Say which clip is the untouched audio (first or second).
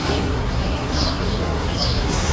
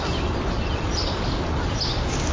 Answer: second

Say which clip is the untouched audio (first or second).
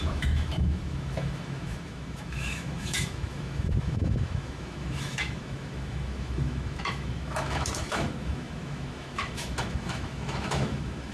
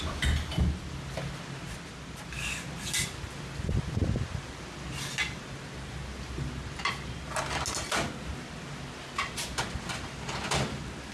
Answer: second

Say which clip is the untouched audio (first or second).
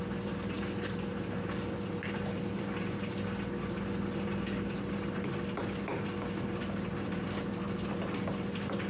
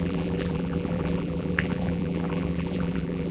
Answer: first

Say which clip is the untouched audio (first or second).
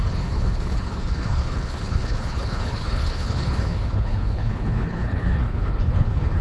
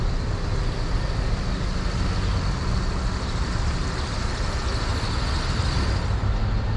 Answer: second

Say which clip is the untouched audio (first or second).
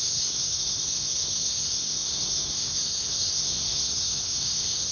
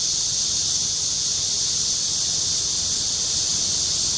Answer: second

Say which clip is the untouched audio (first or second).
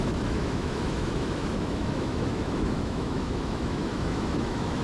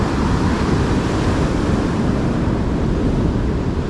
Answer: second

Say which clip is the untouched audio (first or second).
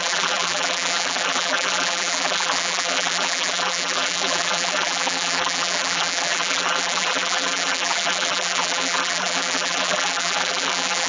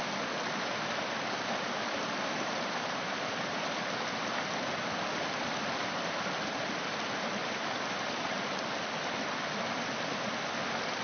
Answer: second